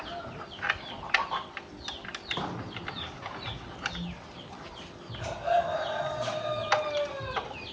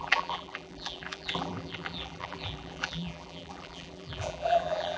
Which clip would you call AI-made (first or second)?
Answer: second